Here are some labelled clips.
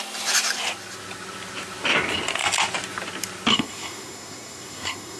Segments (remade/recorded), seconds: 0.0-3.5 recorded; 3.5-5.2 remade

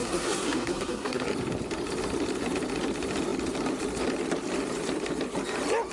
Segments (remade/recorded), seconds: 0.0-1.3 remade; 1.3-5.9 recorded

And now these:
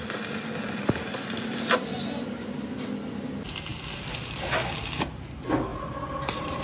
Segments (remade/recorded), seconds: 0.0-3.7 recorded; 3.7-4.3 remade; 4.3-5.7 recorded; 5.7-6.6 remade